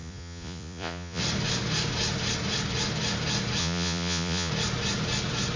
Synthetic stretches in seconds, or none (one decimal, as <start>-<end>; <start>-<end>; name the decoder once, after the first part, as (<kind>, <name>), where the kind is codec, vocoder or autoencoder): 0.0-1.2 (vocoder, Vocos); 3.6-4.5